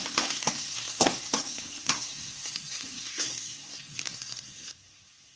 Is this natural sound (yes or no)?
no